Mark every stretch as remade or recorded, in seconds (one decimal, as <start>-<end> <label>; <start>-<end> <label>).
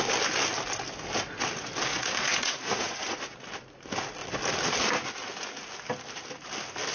0.0-1.9 recorded; 1.9-3.2 remade; 3.2-6.9 recorded